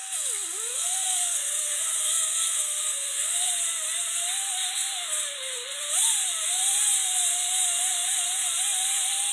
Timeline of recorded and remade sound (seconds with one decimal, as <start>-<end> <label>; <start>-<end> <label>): 0.0-0.7 recorded; 0.7-3.5 remade; 3.5-9.3 recorded